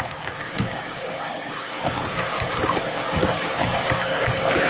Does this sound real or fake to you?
fake